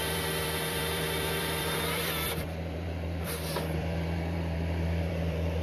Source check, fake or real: fake